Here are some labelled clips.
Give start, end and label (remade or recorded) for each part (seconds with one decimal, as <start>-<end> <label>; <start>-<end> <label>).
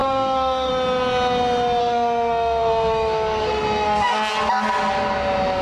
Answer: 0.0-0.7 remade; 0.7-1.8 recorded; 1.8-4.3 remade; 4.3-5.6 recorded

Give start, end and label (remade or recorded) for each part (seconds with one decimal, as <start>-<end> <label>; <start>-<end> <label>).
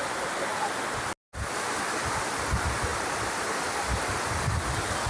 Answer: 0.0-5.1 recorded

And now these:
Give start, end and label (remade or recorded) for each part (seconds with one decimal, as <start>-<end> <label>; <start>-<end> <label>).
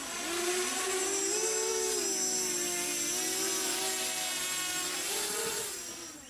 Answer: 0.0-6.3 recorded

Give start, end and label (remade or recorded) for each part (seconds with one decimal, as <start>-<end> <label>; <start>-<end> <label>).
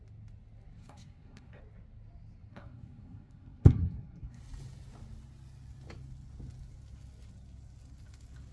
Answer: 0.0-0.8 recorded; 0.8-1.6 remade; 1.6-2.5 recorded; 2.5-4.4 remade; 4.4-8.5 recorded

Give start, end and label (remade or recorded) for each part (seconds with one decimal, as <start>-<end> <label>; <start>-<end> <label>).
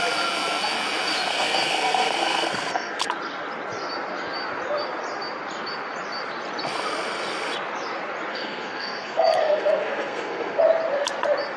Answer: 0.0-1.3 recorded; 1.3-3.1 remade; 3.1-8.3 recorded; 8.3-10.6 remade; 10.6-11.6 recorded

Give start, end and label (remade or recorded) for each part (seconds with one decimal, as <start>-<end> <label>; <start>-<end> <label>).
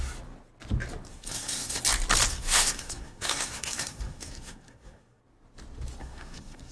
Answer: 0.0-1.1 recorded; 1.1-1.8 remade; 1.8-2.3 recorded; 2.3-5.2 remade; 5.2-6.0 recorded; 6.0-6.7 remade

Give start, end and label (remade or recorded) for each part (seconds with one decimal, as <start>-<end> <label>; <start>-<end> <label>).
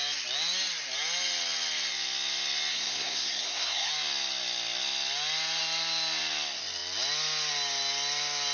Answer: 0.0-2.7 recorded; 2.7-3.9 remade; 3.9-8.5 recorded